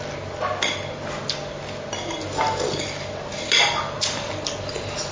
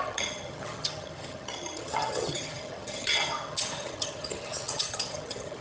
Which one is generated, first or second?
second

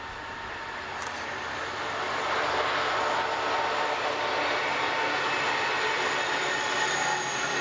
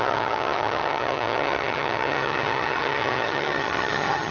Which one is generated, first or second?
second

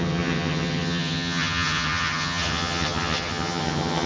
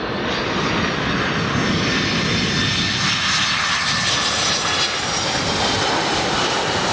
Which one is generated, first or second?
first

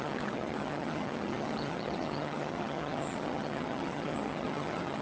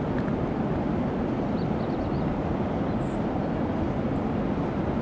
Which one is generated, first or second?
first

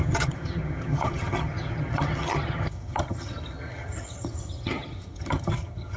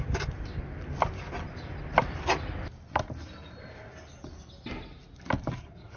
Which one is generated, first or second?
first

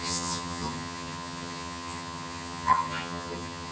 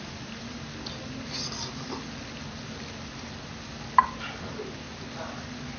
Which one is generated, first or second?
first